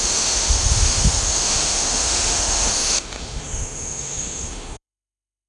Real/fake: fake